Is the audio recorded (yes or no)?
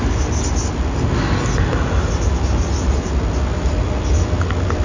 yes